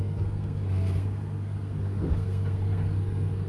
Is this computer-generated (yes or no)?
yes